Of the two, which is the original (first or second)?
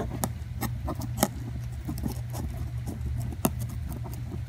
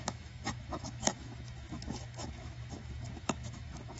first